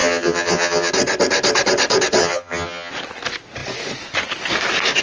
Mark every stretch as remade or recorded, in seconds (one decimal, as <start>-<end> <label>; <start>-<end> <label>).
0.0-0.9 remade; 0.9-2.2 recorded; 2.2-2.9 remade; 2.9-5.0 recorded